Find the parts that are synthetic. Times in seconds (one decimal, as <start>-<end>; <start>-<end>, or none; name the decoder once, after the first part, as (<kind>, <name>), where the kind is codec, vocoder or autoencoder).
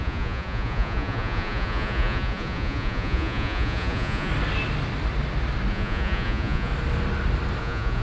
0.0-4.3 (vocoder, Vocos); 5.7-6.7; 7.6-8.0